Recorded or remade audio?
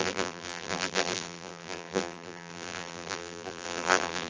remade